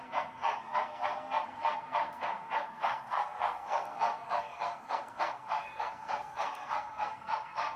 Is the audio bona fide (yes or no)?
no